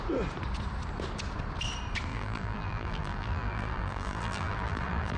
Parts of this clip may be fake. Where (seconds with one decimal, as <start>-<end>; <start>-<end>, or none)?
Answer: 2.1-5.2

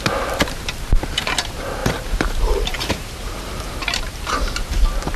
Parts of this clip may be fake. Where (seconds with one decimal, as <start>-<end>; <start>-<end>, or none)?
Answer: 1.8-4.8

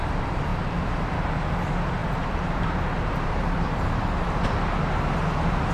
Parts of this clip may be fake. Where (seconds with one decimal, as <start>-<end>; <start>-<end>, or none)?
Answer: 0.5-1.1; 2.0-4.4

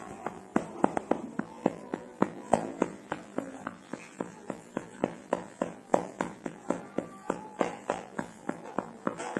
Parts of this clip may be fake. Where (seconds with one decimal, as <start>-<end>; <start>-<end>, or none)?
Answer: 0.0-0.5; 1.4-9.4

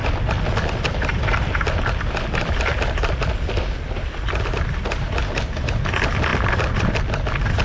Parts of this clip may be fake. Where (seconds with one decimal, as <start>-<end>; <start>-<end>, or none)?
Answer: 0.0-4.6; 6.3-7.0

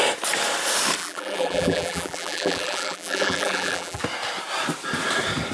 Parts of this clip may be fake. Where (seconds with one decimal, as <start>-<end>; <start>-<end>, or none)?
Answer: 1.0-4.0

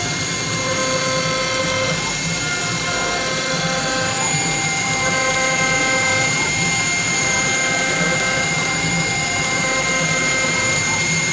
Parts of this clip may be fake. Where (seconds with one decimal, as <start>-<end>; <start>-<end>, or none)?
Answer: 0.0-0.8; 1.6-11.3